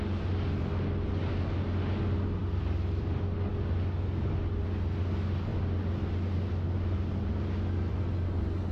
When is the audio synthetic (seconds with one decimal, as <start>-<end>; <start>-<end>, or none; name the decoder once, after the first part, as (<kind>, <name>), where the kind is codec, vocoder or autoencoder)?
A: none